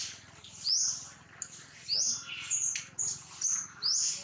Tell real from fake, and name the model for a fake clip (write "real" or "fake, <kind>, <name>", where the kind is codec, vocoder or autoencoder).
real